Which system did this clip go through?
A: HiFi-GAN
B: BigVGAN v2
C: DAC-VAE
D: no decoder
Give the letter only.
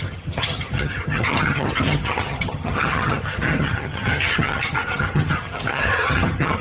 A